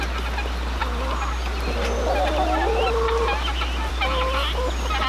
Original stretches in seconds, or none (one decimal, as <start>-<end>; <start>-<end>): 0.0-5.1